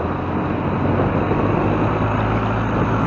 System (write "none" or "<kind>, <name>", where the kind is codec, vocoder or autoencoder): none